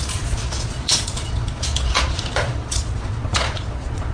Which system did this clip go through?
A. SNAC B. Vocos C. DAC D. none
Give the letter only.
B